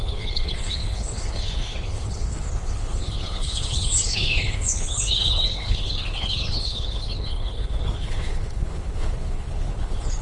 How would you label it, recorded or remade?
remade